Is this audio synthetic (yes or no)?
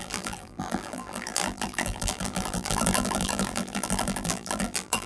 yes